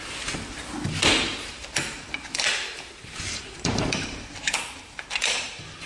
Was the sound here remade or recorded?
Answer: remade